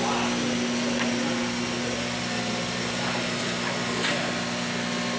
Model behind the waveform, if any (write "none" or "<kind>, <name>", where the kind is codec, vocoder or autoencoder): none